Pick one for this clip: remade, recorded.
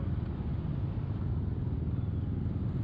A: recorded